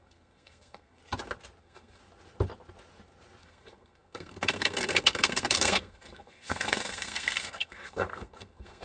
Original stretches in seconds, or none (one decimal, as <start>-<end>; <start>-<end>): 1.0-1.6; 2.0-3.4